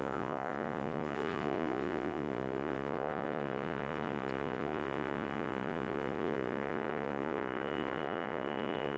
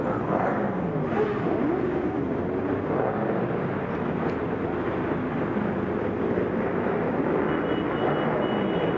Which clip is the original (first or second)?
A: second